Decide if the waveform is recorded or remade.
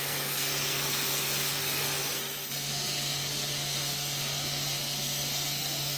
remade